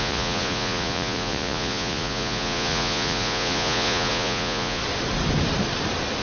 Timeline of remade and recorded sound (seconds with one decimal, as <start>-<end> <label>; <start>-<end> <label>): 0.0-4.8 remade; 4.8-6.2 recorded